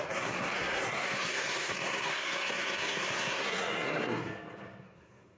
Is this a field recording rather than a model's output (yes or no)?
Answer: no